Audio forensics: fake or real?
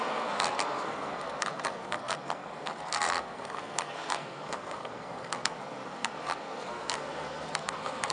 fake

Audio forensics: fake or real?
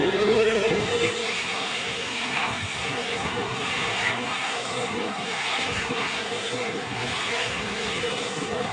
fake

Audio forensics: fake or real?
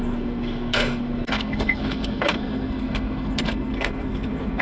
fake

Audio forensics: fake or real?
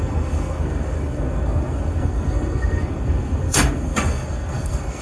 fake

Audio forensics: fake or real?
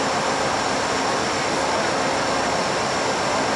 real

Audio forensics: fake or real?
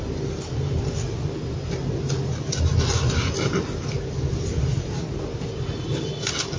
real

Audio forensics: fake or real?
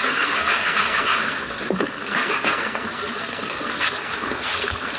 fake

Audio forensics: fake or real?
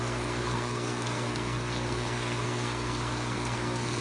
fake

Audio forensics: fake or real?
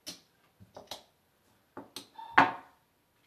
real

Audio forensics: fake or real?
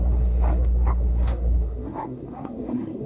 fake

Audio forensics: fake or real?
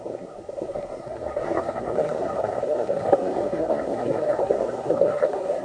fake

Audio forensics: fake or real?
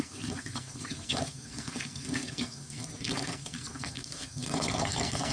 fake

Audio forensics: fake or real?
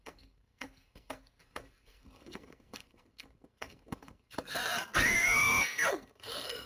fake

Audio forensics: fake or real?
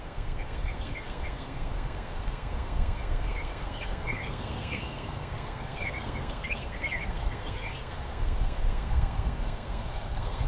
fake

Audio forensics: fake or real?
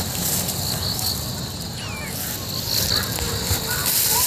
real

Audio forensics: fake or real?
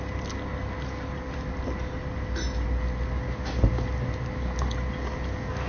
real